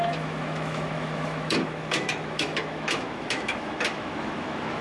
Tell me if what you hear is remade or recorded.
remade